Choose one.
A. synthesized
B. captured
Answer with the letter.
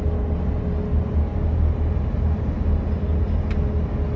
B